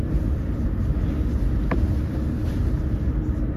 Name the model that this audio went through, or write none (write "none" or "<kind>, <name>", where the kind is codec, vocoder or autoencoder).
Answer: none